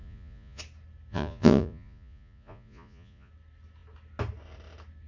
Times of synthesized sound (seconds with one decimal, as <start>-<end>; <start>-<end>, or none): 0.0-0.6; 1.1-3.3